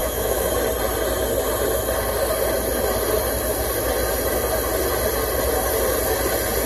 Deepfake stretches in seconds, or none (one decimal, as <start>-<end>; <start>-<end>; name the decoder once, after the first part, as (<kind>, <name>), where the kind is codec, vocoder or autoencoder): 0.0-0.5 (autoencoder, DAC-VAE)